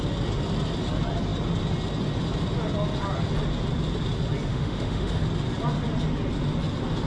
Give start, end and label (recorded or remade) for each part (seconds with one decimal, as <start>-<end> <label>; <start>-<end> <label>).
0.0-4.5 recorded; 4.5-5.2 remade; 5.2-7.1 recorded